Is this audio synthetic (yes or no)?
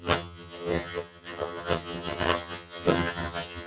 yes